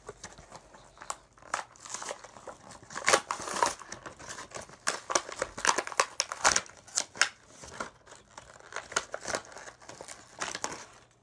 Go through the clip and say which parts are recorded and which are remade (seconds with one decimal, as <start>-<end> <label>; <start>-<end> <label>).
0.0-11.2 recorded